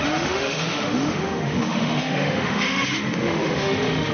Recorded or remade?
remade